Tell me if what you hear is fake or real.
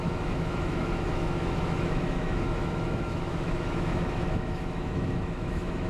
fake